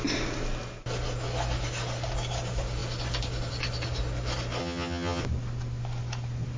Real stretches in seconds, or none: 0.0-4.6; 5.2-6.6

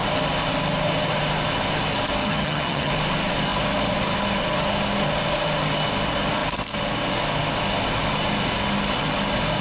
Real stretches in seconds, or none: 0.0-2.2; 2.9-9.6

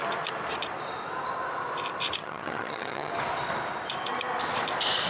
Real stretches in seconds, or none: 0.0-2.2; 3.1-5.1

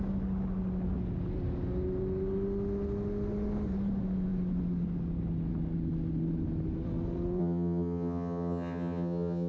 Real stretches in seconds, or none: 0.0-7.4

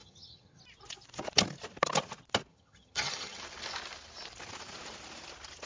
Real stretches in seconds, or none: 0.6-2.5; 3.4-5.7

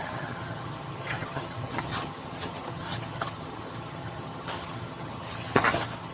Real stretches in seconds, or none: none

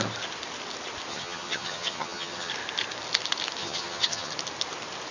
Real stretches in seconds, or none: 0.0-1.1; 2.5-3.6; 4.3-5.1

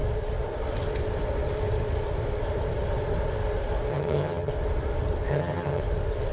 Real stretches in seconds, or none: 0.0-3.9; 4.5-5.3; 5.8-6.3